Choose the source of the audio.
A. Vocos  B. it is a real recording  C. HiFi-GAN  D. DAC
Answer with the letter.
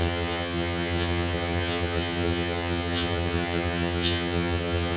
C